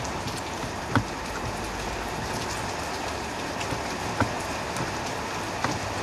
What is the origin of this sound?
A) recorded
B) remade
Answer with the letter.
A